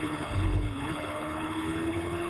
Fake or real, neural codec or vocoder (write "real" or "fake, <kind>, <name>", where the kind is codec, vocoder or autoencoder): fake, codec, HILCodec